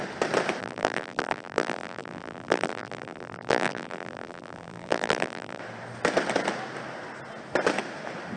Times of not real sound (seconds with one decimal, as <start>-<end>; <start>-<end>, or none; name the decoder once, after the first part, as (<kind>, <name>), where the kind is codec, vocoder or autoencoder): 0.6-5.6 (vocoder, BigVGAN v2)